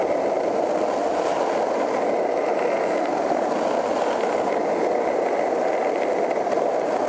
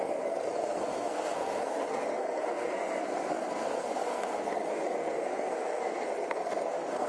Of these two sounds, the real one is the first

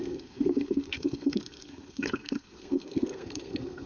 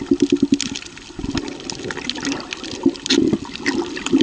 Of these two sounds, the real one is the second